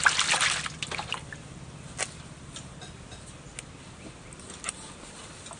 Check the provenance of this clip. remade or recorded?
recorded